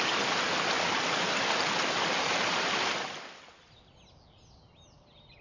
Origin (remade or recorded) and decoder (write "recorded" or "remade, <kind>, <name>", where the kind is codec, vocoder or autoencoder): recorded